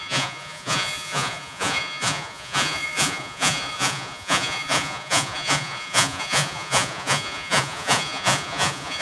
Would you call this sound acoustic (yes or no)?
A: no